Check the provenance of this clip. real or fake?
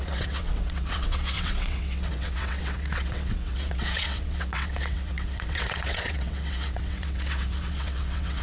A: fake